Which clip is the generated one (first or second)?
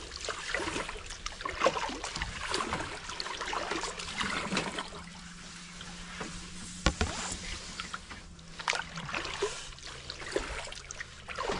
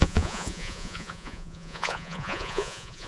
second